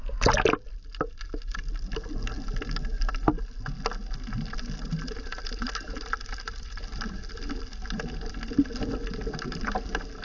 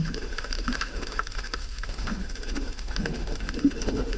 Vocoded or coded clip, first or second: second